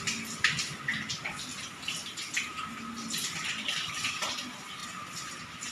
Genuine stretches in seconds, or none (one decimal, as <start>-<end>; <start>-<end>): 0.0-5.7